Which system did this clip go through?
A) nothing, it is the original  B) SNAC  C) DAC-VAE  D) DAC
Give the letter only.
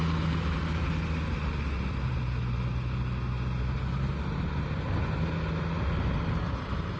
A